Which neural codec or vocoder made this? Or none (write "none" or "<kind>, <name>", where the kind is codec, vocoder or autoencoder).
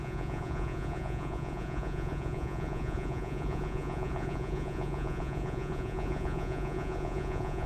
vocoder, Vocos